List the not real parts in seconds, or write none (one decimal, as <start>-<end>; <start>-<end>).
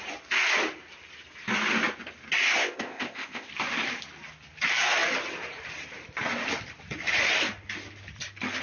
2.6-3.5